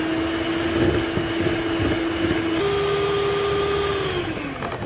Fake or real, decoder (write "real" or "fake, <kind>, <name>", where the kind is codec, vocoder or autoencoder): real